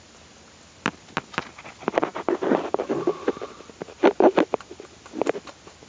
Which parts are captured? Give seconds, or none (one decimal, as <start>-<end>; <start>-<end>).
0.0-5.9